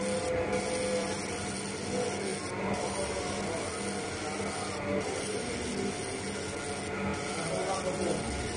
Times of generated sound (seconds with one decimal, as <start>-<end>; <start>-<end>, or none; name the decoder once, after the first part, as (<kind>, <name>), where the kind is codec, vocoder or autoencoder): none